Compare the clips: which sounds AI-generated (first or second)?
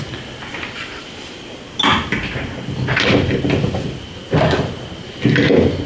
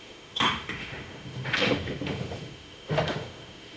second